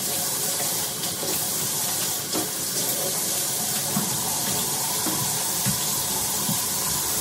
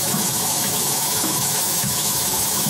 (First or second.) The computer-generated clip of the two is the second